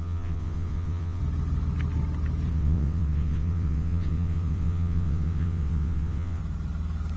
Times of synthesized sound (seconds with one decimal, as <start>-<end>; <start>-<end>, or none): 0.0-1.2; 2.5-6.4